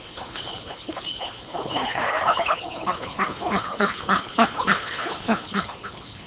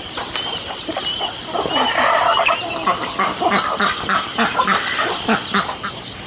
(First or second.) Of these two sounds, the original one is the second